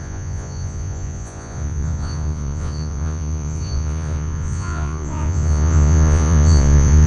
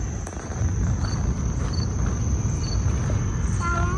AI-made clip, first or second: first